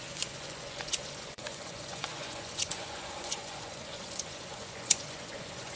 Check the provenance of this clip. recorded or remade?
remade